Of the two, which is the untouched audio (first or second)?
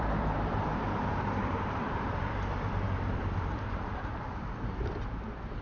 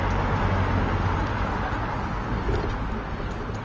second